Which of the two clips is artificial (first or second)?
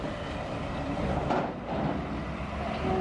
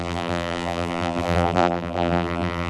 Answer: second